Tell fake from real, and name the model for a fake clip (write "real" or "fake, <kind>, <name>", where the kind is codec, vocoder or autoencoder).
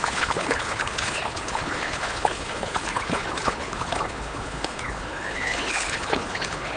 fake, codec, HILCodec